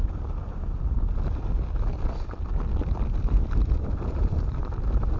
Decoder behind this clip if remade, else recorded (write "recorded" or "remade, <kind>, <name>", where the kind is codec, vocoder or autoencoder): recorded